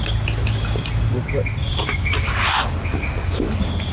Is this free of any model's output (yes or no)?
yes